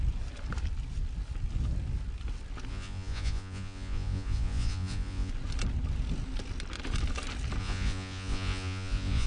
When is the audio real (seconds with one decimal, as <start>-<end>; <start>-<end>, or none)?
0.0-2.7; 5.3-7.6